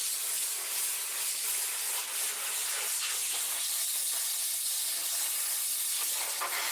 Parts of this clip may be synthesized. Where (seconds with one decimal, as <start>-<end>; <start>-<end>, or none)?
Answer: none